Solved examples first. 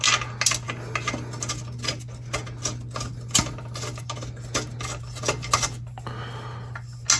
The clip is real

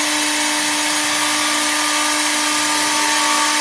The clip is real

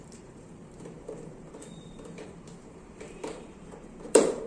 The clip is fake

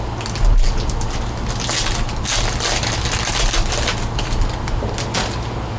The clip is real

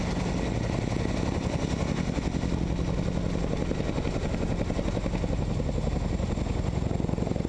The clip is real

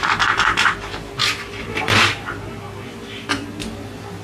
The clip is real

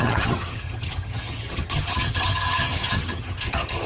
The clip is fake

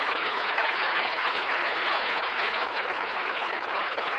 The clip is fake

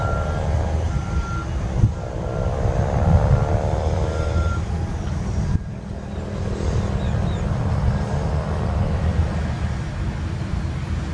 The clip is real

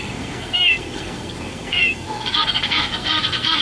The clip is fake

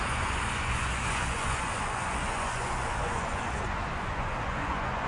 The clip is fake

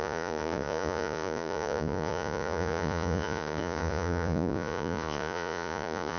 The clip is fake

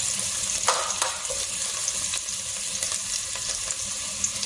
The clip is real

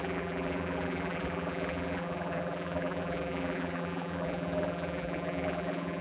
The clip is fake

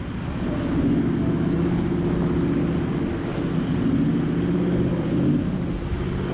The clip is real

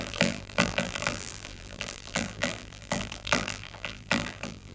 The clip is fake